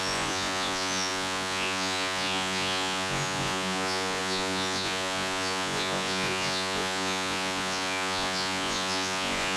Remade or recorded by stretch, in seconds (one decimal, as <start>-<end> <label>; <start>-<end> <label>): 0.0-9.6 remade